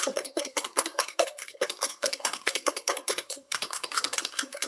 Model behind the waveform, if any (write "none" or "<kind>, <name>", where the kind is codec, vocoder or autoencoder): codec, SNAC